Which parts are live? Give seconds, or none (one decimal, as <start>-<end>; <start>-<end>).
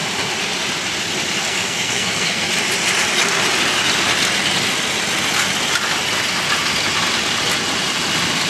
0.0-1.4; 2.5-8.5